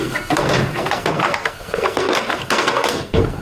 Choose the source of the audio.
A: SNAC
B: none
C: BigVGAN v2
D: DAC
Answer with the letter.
A